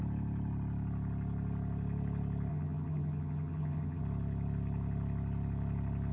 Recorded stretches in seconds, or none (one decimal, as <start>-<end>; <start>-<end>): 0.0-2.5; 4.0-6.1